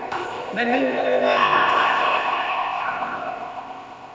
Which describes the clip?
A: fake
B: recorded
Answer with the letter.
A